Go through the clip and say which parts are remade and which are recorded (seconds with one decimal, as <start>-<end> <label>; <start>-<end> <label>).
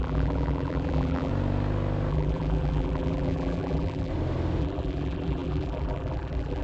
0.0-1.3 remade; 1.3-2.1 recorded; 2.1-4.1 remade; 4.1-4.6 recorded; 4.6-6.6 remade